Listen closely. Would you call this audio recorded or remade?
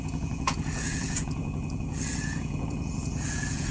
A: remade